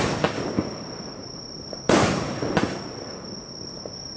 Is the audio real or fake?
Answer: real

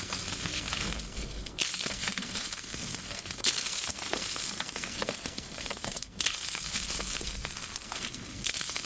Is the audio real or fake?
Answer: fake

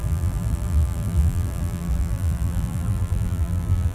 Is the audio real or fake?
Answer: fake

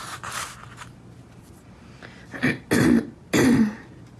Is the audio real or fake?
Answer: real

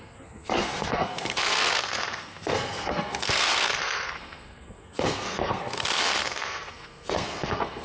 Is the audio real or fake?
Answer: fake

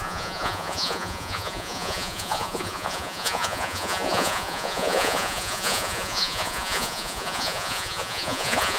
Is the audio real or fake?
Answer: fake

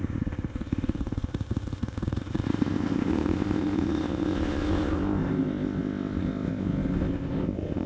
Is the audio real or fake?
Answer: fake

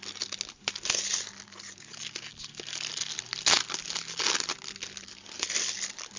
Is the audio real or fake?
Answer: real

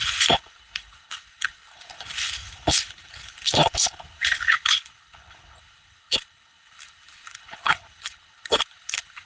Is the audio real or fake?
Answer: fake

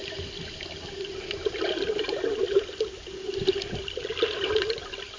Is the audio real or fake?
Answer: real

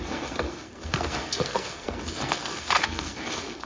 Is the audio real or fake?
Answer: fake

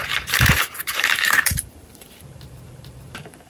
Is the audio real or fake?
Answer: fake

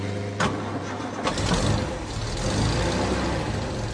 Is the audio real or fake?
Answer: real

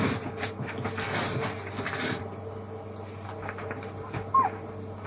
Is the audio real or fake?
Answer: real